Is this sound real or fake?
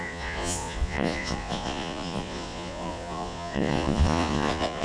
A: fake